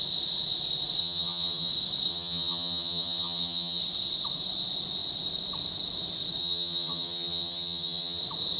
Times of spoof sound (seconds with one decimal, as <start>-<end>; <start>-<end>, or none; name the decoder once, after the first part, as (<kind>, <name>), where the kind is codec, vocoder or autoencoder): 1.0-1.7 (vocoder, HiFi-GAN); 2.1-3.8; 6.4-8.2